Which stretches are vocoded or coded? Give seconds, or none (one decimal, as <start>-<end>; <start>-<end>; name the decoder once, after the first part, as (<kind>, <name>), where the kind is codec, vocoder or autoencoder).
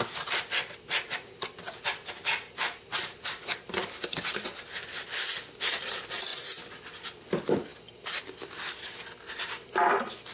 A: 0.0-3.8 (vocoder, BigVGAN v2); 5.8-7.7; 9.9-10.3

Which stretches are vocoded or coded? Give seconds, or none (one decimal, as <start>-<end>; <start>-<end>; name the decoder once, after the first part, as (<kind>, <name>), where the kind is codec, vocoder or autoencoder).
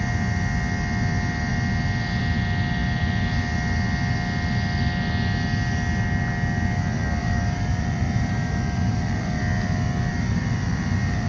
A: 7.2-9.4 (vocoder, BigVGAN v2); 10.1-11.3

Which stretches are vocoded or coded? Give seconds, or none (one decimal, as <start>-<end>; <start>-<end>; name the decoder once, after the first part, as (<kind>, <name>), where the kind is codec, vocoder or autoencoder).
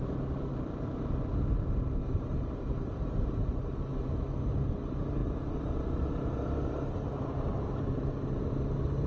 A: 0.5-1.1 (vocoder, BigVGAN v2); 2.0-4.1; 5.2-8.5